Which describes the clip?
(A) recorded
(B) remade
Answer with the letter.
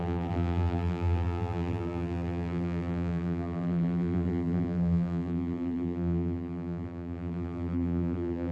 B